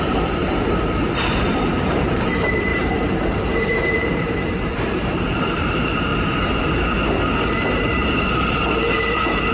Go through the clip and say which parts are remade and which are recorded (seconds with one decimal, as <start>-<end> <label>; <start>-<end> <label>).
0.0-6.1 remade; 6.1-7.4 recorded; 7.4-9.5 remade